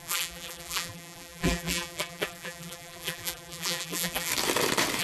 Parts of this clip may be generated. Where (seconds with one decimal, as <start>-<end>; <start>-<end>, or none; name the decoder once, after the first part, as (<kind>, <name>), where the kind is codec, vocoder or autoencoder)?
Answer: 0.0-4.3 (vocoder, BigVGAN v2)